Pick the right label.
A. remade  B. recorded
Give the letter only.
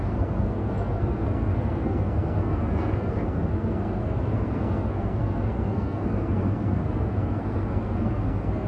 A